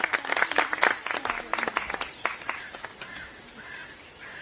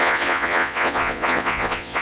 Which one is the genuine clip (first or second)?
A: first